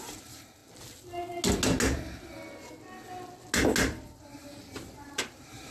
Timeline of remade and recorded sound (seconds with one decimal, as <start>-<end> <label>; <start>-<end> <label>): 0.0-0.6 remade; 0.6-4.0 recorded; 4.0-5.7 remade